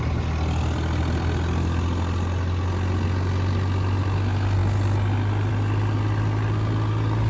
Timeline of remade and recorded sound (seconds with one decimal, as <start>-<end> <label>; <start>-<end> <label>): 0.0-7.3 recorded